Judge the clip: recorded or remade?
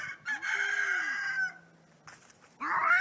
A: recorded